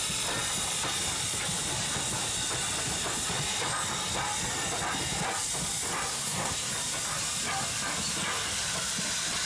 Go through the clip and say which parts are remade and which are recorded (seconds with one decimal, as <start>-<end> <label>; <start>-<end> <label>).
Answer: 0.0-6.1 recorded; 6.1-6.7 remade; 6.7-9.5 recorded